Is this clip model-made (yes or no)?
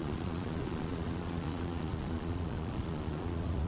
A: yes